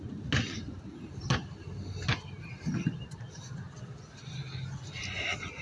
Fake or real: real